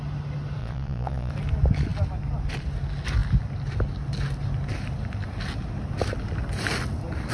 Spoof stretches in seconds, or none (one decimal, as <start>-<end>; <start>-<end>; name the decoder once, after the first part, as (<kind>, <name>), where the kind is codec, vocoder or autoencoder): 0.6-1.3 (vocoder, Vocos)